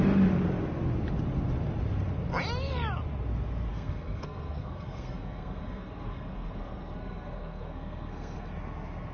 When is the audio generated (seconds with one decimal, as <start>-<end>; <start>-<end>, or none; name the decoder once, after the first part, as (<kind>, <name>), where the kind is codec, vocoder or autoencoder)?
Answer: 3.7-8.5 (codec, SNAC)